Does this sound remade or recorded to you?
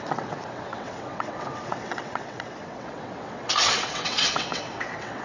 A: remade